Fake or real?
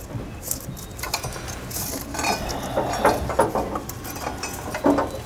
real